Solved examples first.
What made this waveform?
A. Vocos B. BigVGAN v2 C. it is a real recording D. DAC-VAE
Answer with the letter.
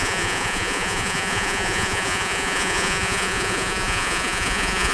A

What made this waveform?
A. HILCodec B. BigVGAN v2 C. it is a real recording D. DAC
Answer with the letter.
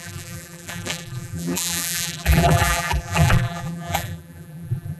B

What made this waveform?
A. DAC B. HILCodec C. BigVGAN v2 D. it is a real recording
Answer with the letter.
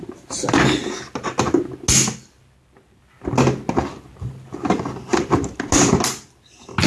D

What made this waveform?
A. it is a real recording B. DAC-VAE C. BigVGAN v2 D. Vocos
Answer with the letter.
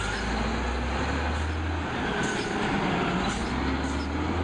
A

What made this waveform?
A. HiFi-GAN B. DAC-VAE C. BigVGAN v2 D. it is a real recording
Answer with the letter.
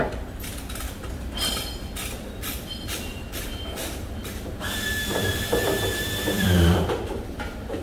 C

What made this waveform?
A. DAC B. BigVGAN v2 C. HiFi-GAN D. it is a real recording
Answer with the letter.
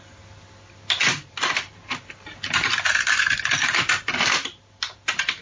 D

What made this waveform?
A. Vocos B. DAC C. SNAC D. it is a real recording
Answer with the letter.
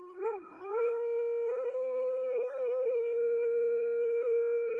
C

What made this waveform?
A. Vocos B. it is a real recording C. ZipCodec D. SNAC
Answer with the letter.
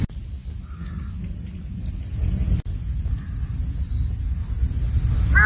B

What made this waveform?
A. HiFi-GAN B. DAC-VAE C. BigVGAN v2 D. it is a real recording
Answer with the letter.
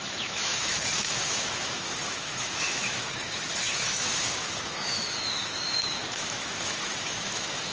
B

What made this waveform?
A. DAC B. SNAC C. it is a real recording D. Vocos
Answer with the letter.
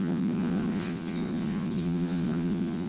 D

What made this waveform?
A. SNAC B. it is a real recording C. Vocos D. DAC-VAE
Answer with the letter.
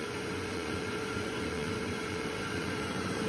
C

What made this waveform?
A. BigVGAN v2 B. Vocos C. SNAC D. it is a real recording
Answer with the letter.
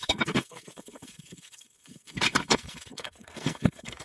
C